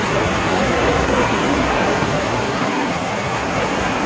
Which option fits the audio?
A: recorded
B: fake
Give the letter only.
B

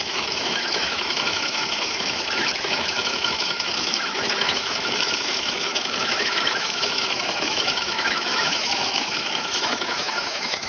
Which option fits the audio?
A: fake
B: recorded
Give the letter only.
A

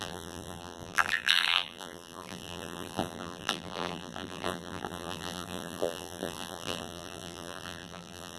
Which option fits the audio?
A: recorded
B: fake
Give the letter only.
B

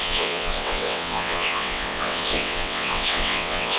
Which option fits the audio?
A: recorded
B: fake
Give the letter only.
B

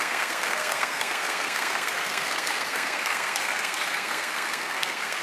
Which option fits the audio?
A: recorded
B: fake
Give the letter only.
B